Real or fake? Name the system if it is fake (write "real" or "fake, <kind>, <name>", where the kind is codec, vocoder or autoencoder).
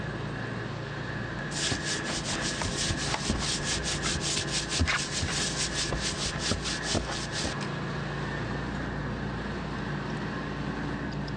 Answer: real